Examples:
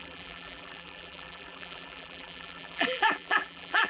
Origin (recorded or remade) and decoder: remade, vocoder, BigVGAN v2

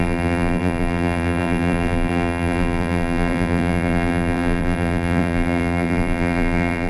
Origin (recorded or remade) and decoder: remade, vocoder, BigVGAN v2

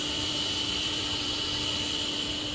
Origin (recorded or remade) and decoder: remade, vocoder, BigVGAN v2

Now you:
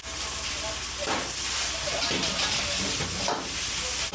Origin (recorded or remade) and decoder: recorded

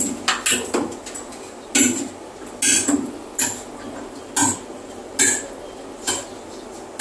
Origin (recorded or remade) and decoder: recorded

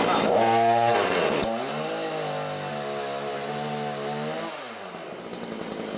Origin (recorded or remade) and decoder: recorded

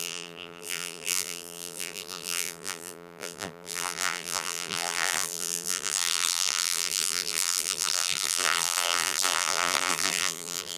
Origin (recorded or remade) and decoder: remade, vocoder, BigVGAN v2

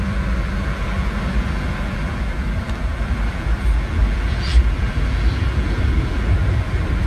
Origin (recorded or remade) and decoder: remade, vocoder, BigVGAN v2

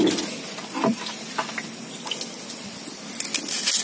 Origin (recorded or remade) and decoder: recorded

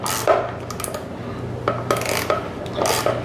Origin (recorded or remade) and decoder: recorded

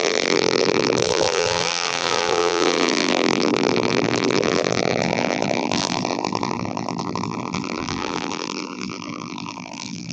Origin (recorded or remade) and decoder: remade, vocoder, BigVGAN v2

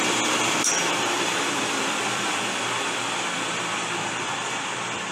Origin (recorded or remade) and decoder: remade, vocoder, BigVGAN v2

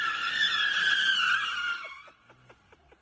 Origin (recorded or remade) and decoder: recorded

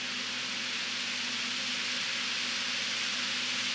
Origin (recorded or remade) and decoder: recorded